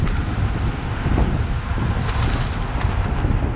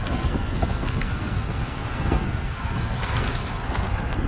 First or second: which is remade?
second